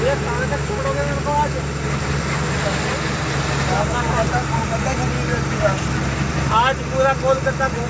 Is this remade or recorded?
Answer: recorded